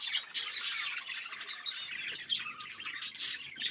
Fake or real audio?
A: real